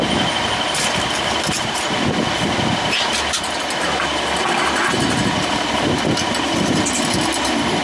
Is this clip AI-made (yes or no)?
no